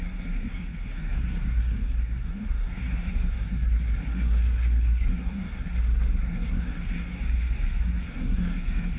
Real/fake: fake